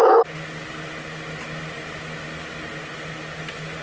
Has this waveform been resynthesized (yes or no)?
no